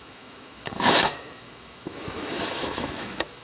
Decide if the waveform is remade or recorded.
remade